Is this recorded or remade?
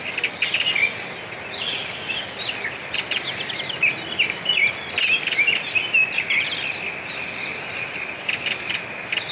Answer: recorded